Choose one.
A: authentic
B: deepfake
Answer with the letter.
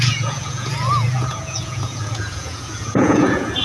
B